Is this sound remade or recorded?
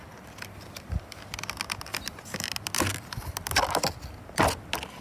recorded